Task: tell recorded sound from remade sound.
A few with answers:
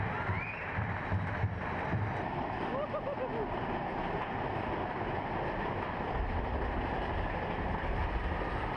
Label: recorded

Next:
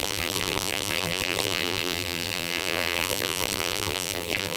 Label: remade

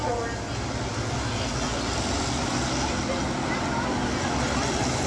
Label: recorded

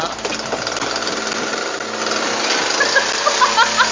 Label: recorded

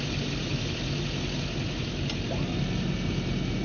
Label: recorded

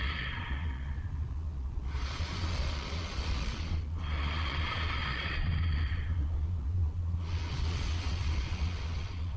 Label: remade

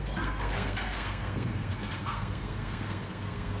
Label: remade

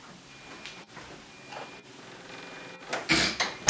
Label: recorded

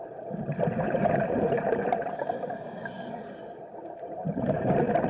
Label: remade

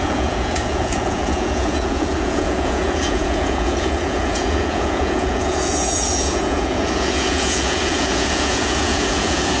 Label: remade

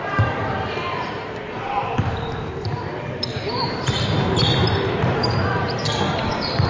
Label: remade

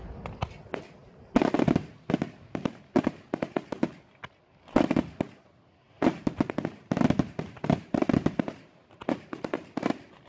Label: recorded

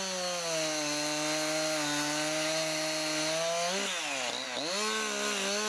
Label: recorded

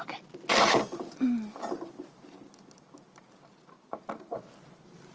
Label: recorded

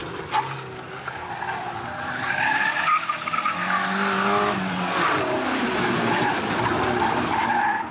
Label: recorded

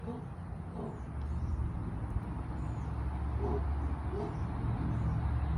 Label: recorded